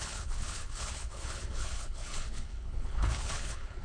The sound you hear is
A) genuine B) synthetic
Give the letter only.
B